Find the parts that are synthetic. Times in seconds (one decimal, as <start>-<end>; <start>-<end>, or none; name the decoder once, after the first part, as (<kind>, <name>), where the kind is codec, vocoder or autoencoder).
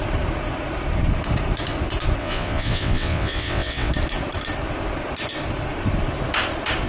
2.2-3.9 (vocoder, WaveNeXt)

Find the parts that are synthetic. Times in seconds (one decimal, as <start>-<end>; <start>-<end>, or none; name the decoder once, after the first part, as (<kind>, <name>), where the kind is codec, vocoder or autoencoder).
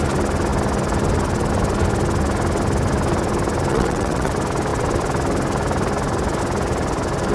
3.7-4.3 (vocoder, WaveNeXt)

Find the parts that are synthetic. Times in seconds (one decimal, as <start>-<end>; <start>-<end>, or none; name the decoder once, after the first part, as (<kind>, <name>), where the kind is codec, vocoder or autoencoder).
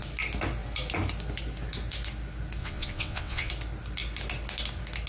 2.6-3.5 (vocoder, WaveNeXt)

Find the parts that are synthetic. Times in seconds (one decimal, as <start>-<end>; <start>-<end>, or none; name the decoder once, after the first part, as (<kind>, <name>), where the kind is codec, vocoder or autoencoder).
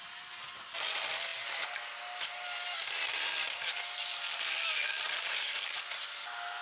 none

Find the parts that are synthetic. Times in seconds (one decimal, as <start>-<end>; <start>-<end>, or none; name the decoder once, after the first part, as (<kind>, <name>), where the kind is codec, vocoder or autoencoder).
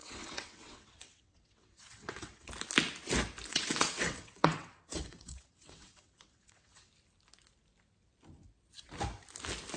0.0-2.5 (vocoder, WaveNeXt); 3.5-6.9